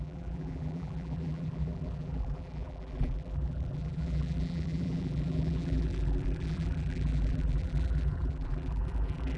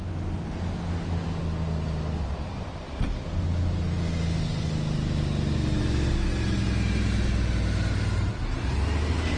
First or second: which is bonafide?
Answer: second